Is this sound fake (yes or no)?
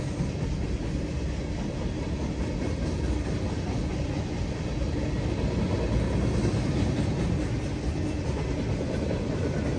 no